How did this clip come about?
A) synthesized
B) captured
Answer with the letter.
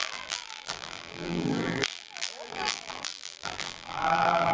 A